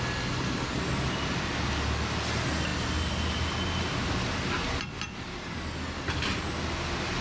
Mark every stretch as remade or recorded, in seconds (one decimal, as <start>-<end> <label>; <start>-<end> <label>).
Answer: 0.0-7.2 recorded

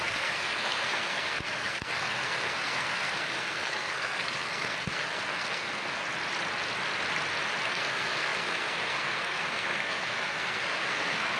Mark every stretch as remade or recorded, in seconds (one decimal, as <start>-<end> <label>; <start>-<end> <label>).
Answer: 0.0-6.0 remade; 6.0-7.7 recorded; 7.7-11.4 remade